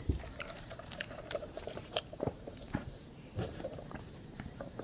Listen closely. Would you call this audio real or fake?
fake